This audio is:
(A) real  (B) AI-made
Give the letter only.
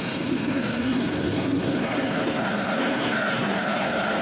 B